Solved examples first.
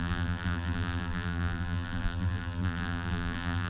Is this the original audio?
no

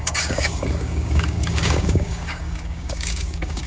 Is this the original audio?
no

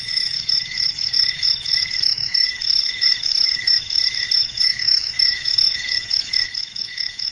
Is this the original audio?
no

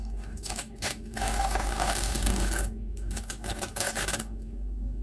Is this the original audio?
no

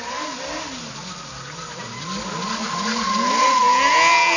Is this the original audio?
yes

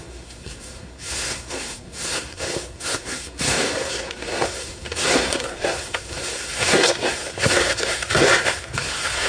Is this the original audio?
no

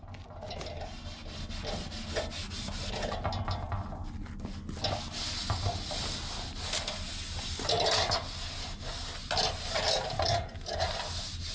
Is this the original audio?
yes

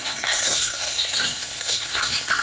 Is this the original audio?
no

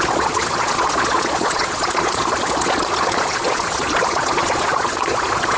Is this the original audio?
no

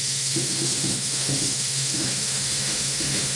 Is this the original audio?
no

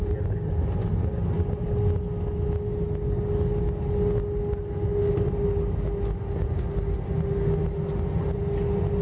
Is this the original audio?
yes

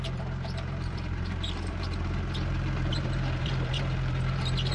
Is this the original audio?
no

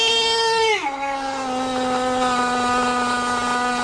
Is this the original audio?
yes